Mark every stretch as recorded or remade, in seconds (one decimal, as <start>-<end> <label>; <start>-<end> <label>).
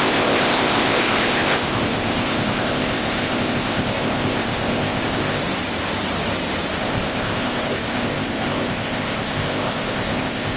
0.0-5.4 remade; 5.4-6.8 recorded; 6.8-10.6 remade